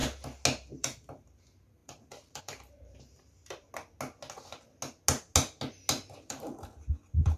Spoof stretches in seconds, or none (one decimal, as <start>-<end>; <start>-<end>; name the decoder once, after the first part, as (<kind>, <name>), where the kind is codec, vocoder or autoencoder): 0.7-3.4 (vocoder, BigVGAN v2); 6.1-7.4